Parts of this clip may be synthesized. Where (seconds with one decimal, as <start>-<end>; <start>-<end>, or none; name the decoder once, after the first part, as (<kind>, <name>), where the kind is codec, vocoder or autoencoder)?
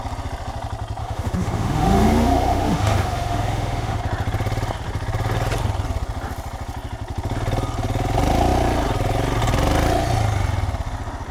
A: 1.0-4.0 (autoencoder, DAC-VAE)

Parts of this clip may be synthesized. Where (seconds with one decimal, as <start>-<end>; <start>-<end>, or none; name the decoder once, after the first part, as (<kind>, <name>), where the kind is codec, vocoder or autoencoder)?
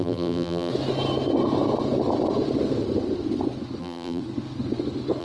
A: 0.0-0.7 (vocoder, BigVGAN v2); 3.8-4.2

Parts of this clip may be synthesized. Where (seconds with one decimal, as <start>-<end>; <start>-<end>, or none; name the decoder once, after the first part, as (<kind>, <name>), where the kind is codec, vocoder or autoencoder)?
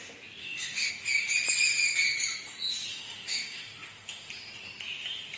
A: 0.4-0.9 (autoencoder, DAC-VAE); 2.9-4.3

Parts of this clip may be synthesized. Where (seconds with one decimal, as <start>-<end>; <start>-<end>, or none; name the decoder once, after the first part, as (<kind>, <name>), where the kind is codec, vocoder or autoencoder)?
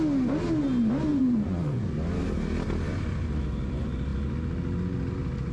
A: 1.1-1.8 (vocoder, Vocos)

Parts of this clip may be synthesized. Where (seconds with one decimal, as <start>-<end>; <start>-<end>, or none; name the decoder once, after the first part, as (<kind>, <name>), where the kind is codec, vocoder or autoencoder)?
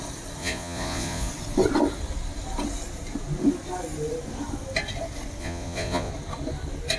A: 0.4-1.3 (vocoder, Vocos); 5.4-6.1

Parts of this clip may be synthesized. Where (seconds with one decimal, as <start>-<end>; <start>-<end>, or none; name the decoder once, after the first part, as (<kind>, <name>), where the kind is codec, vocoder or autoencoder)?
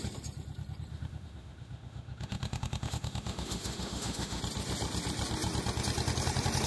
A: 0.9-4.4 (autoencoder, DAC-VAE)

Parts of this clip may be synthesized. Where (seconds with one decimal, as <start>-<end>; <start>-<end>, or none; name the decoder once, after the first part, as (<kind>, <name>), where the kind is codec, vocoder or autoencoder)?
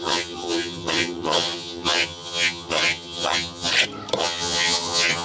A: 0.0-3.7 (vocoder, HiFi-GAN); 4.2-5.2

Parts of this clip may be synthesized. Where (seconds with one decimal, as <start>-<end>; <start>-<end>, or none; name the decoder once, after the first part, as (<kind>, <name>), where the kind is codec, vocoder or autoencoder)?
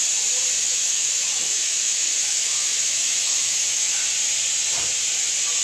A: 0.6-4.0 (autoencoder, DAC-VAE)